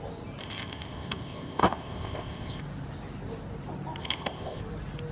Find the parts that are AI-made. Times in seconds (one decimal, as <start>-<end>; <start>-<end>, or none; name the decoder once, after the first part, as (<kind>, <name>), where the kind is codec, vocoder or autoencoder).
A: 0.4-2.6 (codec, ZipCodec); 4.0-4.6